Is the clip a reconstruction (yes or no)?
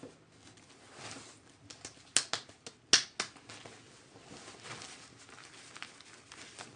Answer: no